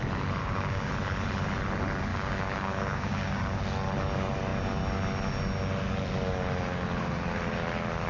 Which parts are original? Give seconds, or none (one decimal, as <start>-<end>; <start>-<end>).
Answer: 0.0-0.4; 0.9-2.1; 3.6-8.1